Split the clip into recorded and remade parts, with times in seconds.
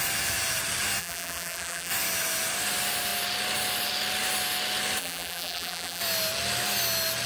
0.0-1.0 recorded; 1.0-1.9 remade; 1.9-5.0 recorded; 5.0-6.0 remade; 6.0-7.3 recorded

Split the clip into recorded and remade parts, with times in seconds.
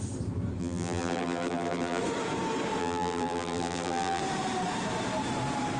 0.0-0.6 recorded; 0.6-2.0 remade; 2.0-2.8 recorded; 2.8-4.2 remade; 4.2-5.8 recorded